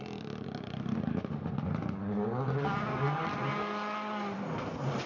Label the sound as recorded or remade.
recorded